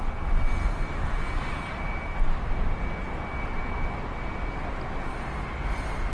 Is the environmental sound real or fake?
real